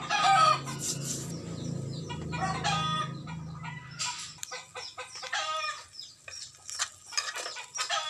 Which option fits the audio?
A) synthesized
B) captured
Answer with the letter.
B